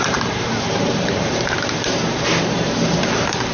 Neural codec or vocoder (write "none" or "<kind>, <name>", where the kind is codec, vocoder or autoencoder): vocoder, BigVGAN v2